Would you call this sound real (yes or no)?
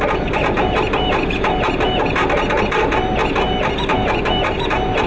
yes